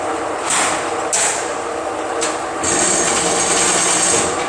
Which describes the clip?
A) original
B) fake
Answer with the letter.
A